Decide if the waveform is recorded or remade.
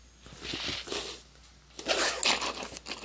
recorded